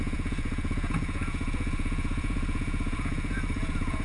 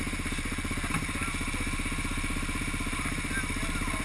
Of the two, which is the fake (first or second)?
first